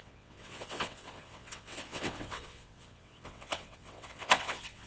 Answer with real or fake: fake